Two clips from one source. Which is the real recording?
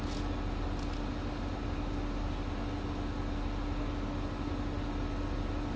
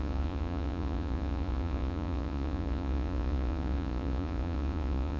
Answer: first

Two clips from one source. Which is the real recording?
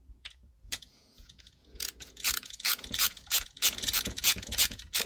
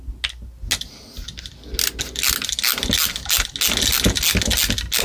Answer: second